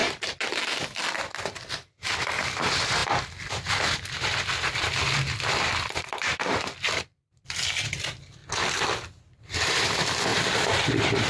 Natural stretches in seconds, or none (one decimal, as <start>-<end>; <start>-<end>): 8.4-9.2